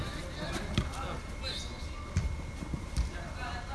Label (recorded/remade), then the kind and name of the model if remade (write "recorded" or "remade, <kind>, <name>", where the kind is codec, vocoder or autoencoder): recorded